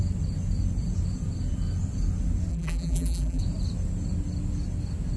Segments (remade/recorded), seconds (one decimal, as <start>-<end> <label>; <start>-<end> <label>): 0.0-2.5 recorded; 2.5-3.4 remade; 3.4-5.2 recorded